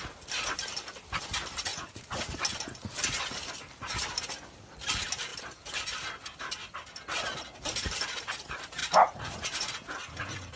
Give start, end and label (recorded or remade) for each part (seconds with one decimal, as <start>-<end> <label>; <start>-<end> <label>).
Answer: 0.0-1.7 recorded; 1.7-2.4 remade; 2.4-8.8 recorded; 8.8-9.7 remade; 9.7-10.6 recorded